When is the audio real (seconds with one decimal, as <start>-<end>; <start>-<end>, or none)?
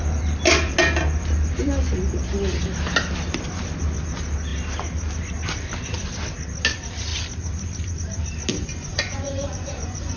0.0-8.5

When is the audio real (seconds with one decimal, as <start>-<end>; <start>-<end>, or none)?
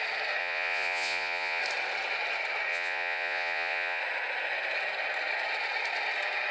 0.0-0.4; 1.6-2.7; 4.0-6.5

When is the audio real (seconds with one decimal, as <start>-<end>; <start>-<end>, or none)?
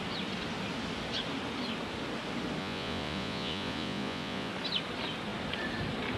0.0-2.6; 4.5-6.2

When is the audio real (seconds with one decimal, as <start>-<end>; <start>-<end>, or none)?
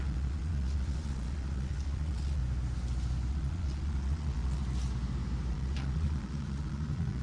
2.4-3.3; 4.6-5.5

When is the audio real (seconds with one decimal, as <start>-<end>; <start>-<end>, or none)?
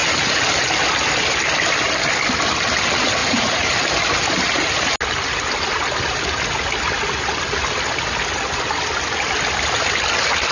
0.0-3.2; 3.7-10.5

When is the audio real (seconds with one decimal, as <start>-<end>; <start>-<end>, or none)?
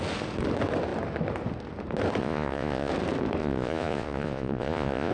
0.0-2.2; 2.9-3.4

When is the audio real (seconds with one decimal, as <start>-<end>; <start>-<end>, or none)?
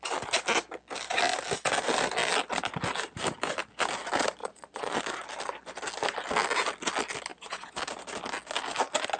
0.0-4.4; 5.0-7.3; 7.8-9.2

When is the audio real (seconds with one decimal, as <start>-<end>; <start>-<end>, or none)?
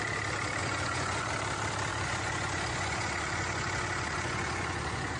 0.0-0.6; 1.3-1.9